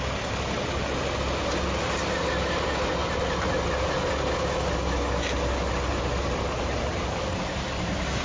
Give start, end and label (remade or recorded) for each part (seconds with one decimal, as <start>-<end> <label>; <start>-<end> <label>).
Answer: 0.0-8.2 recorded